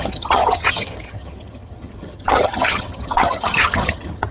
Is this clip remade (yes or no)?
yes